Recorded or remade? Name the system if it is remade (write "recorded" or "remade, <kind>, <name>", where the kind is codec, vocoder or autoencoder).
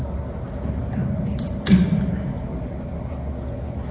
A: recorded